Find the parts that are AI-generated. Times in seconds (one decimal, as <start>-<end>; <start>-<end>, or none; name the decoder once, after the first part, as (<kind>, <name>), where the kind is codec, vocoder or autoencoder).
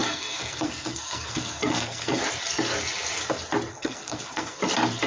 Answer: 0.0-2.2 (codec, SNAC); 3.7-4.6